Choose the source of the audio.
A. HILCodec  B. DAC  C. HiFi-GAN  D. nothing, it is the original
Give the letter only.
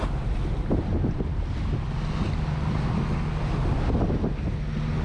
D